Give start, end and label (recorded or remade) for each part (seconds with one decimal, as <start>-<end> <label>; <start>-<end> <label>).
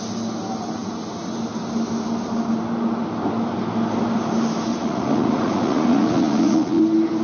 0.0-4.7 recorded; 4.7-6.8 remade; 6.8-7.2 recorded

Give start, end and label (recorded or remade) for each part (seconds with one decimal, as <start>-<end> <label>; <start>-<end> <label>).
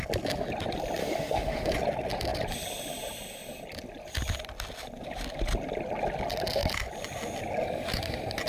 0.0-1.0 recorded; 1.0-1.7 remade; 1.7-8.5 recorded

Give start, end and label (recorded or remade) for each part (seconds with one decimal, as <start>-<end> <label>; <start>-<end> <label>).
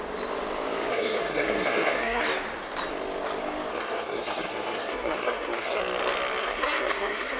0.0-0.9 recorded; 0.9-2.2 remade; 2.2-3.7 recorded; 3.7-5.8 remade; 5.8-6.4 recorded; 6.4-7.4 remade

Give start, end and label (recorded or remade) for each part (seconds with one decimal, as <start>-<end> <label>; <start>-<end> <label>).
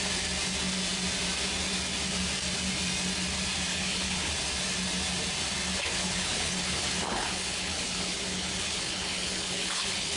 0.0-3.7 recorded; 3.7-4.3 remade; 4.3-6.0 recorded; 6.0-10.2 remade